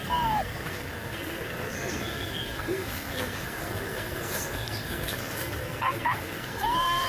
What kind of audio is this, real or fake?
fake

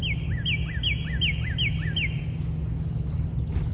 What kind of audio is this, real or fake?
real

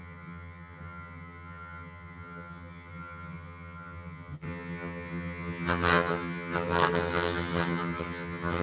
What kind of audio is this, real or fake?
fake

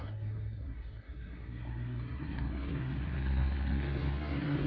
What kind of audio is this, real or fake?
fake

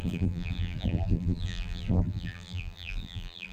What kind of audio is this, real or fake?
fake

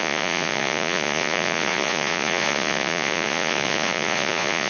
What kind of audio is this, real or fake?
fake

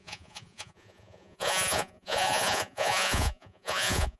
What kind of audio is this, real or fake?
fake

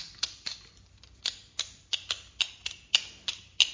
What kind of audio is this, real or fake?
real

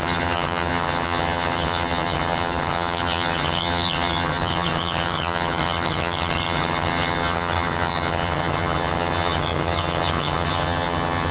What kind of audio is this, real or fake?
fake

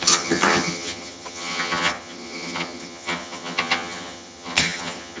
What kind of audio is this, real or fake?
fake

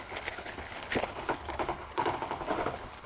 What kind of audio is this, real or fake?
fake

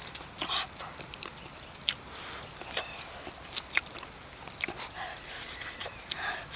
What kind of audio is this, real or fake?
real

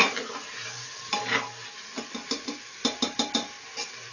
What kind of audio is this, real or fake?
real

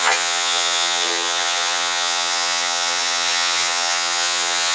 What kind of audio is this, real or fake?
fake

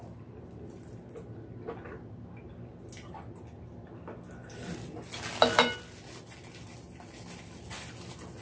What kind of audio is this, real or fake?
real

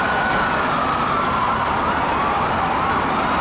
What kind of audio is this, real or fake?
real